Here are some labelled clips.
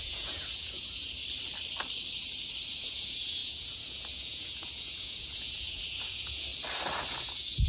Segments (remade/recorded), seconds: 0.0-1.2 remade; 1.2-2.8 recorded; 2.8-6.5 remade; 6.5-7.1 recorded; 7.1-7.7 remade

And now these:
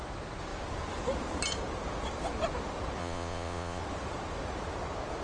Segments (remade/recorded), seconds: 0.0-3.0 recorded; 3.0-3.8 remade; 3.8-5.2 recorded

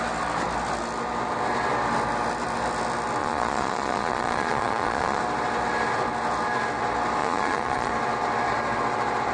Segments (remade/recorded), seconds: 0.0-3.2 recorded; 3.2-5.2 remade; 5.2-7.2 recorded; 7.2-7.9 remade; 7.9-9.3 recorded

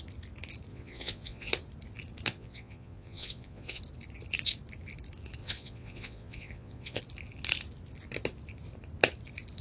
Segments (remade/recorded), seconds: 0.0-0.7 recorded; 0.7-1.5 remade; 1.5-2.3 recorded; 2.3-3.8 remade; 3.8-5.4 recorded; 5.4-7.0 remade; 7.0-9.6 recorded

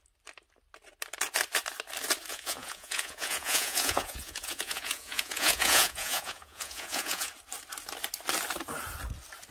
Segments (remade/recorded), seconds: 0.0-2.3 recorded; 2.3-7.3 remade; 7.3-9.5 recorded

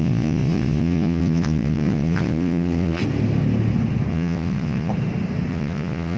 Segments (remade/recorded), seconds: 0.0-3.0 remade; 3.0-4.1 recorded; 4.1-4.9 remade; 4.9-5.5 recorded; 5.5-6.2 remade

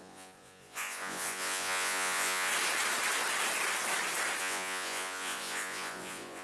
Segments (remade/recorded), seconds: 0.0-2.5 remade; 2.5-4.4 recorded; 4.4-6.4 remade